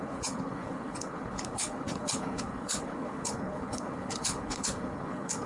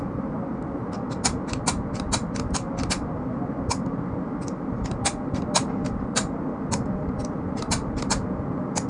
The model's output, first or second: first